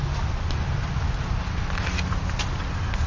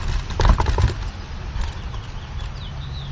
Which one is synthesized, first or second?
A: second